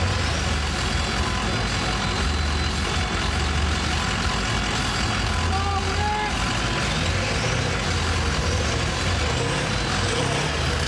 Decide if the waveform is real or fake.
real